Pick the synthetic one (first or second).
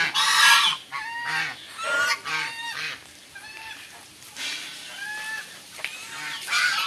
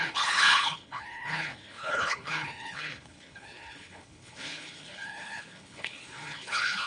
second